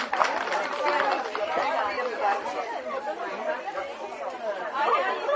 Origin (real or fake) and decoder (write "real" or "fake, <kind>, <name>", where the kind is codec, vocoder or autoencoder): fake, vocoder, BigVGAN v2